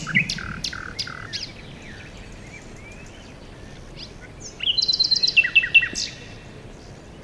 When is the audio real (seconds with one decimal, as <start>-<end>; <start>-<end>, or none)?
1.0-7.2